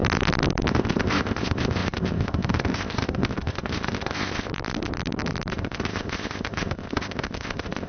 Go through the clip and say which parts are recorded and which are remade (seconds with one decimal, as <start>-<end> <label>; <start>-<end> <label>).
0.0-0.7 recorded; 0.7-4.5 remade; 4.5-5.5 recorded; 5.5-7.9 remade